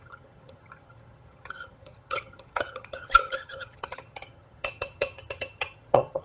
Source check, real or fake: fake